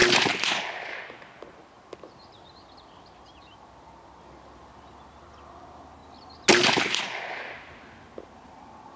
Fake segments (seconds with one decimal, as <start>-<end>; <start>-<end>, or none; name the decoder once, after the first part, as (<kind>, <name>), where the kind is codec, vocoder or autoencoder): none